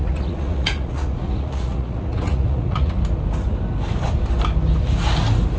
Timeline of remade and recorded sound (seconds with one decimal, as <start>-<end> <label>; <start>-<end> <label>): 0.0-3.0 remade; 3.0-5.6 recorded